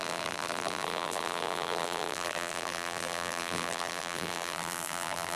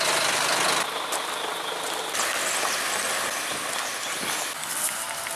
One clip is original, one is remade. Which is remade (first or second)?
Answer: first